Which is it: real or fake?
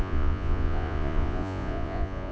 fake